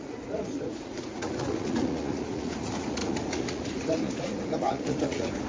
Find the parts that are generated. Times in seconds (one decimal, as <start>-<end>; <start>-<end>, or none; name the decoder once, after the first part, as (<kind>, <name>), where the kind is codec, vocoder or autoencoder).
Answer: 0.0-5.5 (vocoder, Vocos)